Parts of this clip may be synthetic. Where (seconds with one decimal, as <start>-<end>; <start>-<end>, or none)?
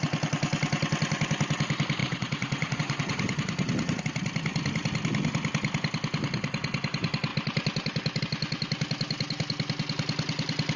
2.0-4.0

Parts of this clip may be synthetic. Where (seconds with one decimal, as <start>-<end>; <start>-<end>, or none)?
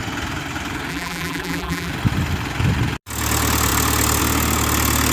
0.9-1.9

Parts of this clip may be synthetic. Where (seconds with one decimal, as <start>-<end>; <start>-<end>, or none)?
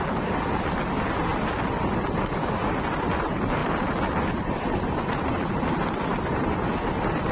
none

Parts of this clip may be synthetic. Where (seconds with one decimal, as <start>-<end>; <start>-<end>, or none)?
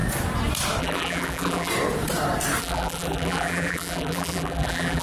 0.8-1.7; 2.6-5.0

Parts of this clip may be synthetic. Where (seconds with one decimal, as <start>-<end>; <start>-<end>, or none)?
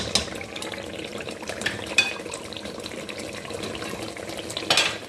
1.1-3.3